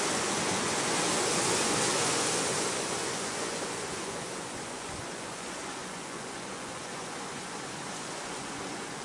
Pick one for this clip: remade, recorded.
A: remade